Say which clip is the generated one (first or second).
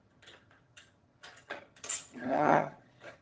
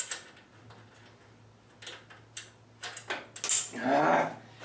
first